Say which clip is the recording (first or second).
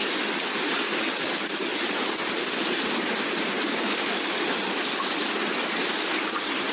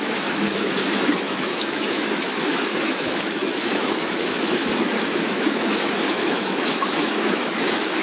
first